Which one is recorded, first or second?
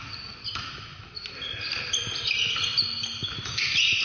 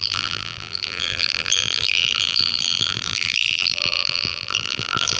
first